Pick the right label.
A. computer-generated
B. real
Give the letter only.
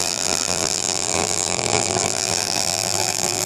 A